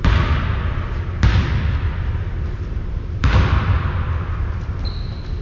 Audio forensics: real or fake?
real